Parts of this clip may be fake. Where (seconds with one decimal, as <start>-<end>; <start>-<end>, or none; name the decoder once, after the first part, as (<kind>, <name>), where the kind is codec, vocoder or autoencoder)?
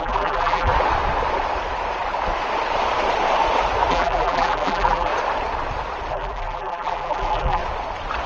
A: 0.0-0.7 (vocoder, BigVGAN v2); 3.9-5.1; 6.1-7.6